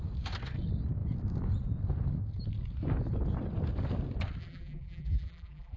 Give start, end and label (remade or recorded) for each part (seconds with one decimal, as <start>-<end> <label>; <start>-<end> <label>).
0.0-4.4 recorded; 4.4-5.8 remade